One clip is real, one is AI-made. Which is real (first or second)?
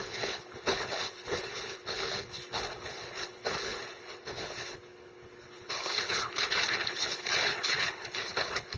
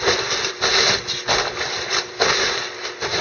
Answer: second